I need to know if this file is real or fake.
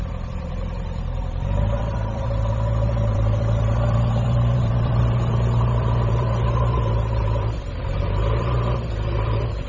fake